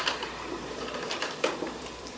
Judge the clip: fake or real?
fake